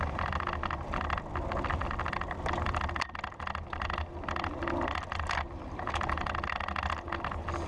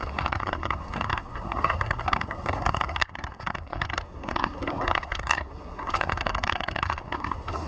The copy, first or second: second